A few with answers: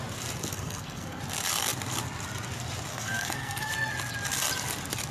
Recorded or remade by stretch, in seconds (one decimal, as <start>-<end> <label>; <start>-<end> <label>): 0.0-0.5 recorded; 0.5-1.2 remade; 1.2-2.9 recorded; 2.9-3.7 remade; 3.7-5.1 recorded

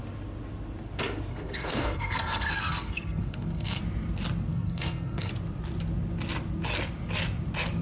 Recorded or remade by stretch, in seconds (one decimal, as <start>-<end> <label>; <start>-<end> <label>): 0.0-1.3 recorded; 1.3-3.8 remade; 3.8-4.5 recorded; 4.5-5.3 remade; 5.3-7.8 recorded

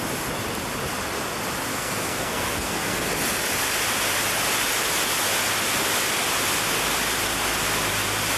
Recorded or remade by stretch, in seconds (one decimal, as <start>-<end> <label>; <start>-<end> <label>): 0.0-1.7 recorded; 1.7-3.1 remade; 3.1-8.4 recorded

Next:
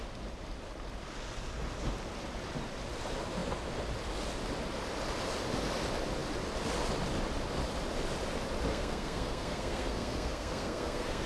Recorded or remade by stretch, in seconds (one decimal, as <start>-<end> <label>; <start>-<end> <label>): 0.0-8.7 recorded; 8.7-11.3 remade

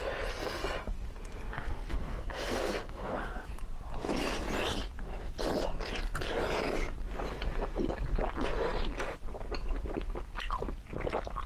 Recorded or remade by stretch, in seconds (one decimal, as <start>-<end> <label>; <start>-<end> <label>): 0.0-1.5 recorded; 1.5-3.5 remade; 3.5-11.5 recorded

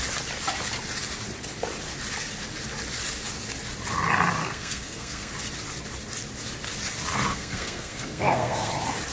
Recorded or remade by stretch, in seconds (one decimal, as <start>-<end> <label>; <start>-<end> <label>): 0.0-4.4 recorded; 4.4-5.3 remade; 5.3-7.3 recorded; 7.3-8.7 remade; 8.7-9.1 recorded

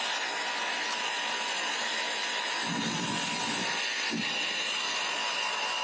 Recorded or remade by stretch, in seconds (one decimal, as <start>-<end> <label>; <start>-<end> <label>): 0.0-5.8 recorded